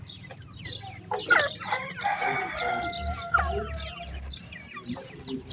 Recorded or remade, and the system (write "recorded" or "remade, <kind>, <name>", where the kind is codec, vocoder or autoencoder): recorded